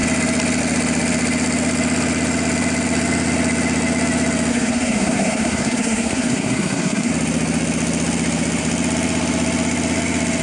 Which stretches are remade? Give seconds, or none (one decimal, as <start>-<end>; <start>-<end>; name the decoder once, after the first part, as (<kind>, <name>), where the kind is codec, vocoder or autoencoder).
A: 4.5-7.1 (codec, SNAC)